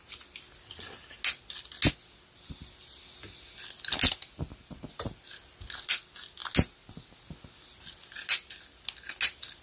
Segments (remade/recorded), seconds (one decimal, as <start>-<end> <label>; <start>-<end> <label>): 0.0-9.6 recorded